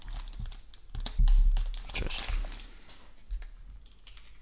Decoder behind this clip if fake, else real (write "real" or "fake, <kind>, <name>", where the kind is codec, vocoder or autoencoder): real